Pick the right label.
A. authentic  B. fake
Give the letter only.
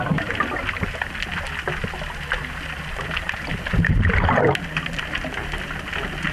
A